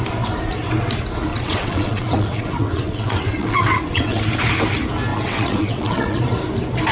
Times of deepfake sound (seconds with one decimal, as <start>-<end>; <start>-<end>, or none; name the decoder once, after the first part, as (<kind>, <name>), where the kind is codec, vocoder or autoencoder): 1.3-4.2 (vocoder, WaveNeXt); 5.1-6.2